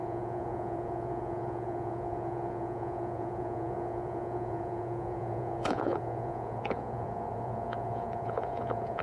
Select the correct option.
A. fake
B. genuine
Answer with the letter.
A